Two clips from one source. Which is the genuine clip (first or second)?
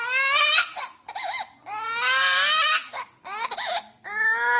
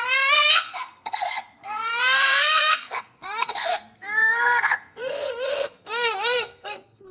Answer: first